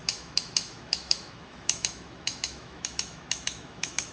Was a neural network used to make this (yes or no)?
yes